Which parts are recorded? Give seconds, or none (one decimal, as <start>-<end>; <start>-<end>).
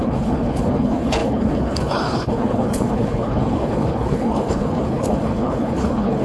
none